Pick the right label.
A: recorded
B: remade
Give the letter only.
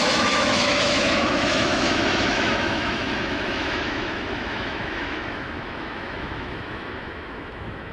B